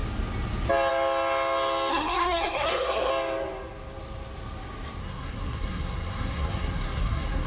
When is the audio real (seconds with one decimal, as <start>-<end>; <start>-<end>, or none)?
0.0-1.9; 3.1-5.0